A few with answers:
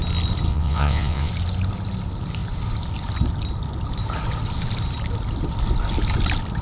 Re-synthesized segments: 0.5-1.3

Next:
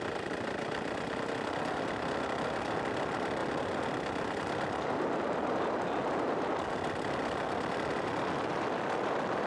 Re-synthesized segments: none

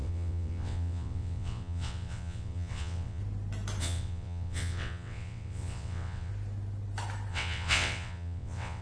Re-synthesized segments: 0.0-3.2; 3.8-6.3; 7.3-8.8

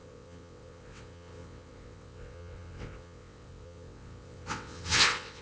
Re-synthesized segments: 0.0-5.4